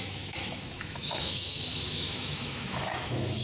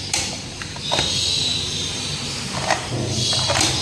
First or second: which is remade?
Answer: first